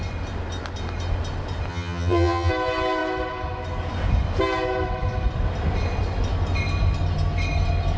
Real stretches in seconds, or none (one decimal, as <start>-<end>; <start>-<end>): 0.0-1.7; 2.5-8.0